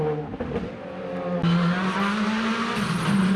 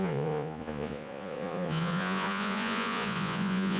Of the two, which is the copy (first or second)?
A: second